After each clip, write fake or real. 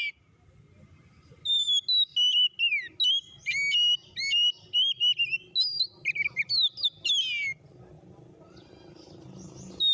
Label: real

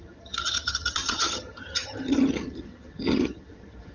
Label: fake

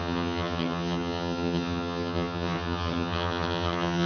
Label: fake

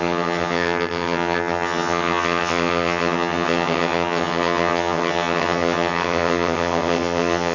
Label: fake